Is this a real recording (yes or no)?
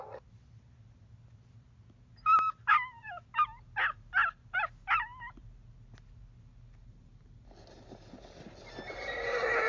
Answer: yes